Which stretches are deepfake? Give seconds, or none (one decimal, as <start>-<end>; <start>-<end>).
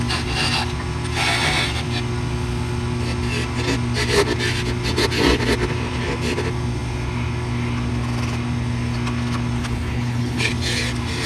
9.6-10.5